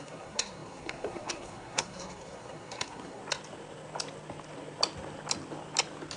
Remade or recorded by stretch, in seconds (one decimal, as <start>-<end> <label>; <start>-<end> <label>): 0.0-3.2 remade; 3.2-6.2 recorded